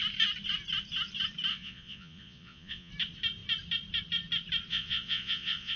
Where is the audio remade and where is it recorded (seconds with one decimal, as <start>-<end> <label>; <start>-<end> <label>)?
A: 0.0-1.5 recorded; 1.5-2.9 remade; 2.9-4.7 recorded; 4.7-5.8 remade